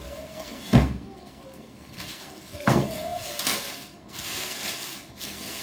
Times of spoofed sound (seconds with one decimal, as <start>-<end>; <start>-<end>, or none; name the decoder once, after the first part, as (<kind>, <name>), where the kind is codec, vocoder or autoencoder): 0.0-5.6 (codec, SNAC)